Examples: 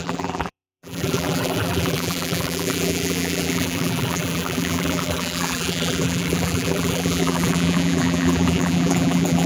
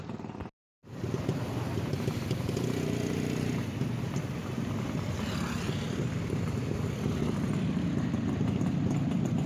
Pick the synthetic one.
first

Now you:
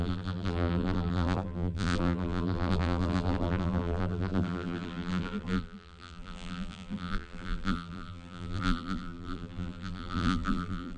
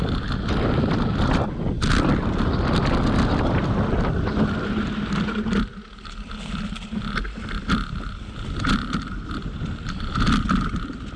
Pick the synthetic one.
first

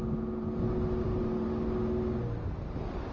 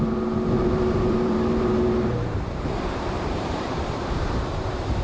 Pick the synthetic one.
second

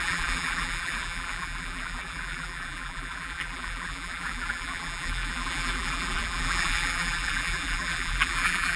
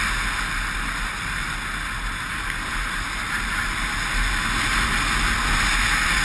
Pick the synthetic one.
first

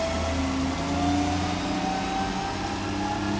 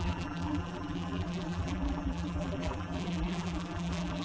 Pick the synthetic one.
second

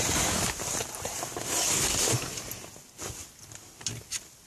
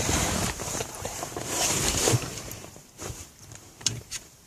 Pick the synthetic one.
second